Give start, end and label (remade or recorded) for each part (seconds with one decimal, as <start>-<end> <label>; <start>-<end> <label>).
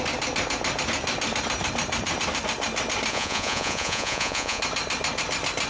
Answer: 0.0-3.1 recorded; 3.1-4.6 remade; 4.6-5.7 recorded